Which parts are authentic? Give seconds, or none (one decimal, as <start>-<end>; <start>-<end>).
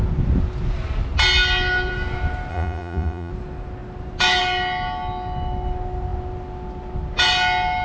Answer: 0.0-2.5; 3.3-7.8